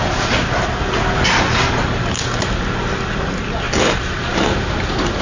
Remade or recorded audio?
recorded